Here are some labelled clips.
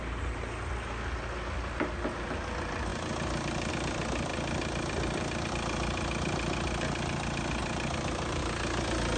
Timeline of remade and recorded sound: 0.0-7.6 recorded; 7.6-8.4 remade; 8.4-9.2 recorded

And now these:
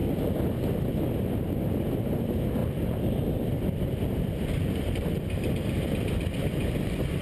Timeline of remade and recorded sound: 0.0-2.6 recorded; 2.6-7.2 remade

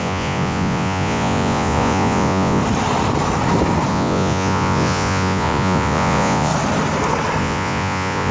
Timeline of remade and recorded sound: 0.0-2.6 remade; 2.6-3.9 recorded; 3.9-6.5 remade; 6.5-7.4 recorded; 7.4-8.3 remade

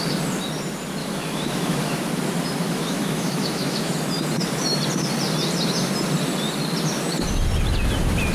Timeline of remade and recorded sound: 0.0-1.0 recorded; 1.0-2.0 remade; 2.0-2.6 recorded; 2.6-3.9 remade; 3.9-8.3 recorded

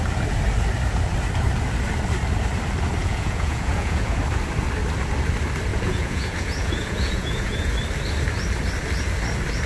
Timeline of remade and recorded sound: 0.0-3.0 recorded; 3.0-4.2 remade; 4.2-5.7 recorded; 5.7-7.7 remade; 7.7-9.7 recorded